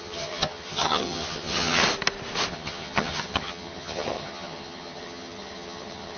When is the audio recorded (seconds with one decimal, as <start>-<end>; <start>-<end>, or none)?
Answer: 1.8-2.5